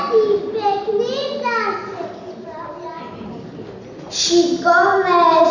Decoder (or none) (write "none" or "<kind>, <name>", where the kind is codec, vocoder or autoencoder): none